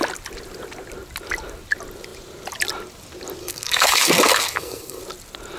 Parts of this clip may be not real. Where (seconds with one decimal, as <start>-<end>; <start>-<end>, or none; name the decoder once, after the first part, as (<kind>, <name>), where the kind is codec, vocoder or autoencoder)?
3.4-5.0 (codec, SNAC)